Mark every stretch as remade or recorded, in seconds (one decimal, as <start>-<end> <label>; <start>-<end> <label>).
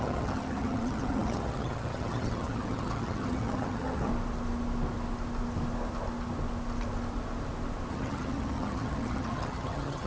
0.0-4.1 remade; 4.1-7.9 recorded; 7.9-10.1 remade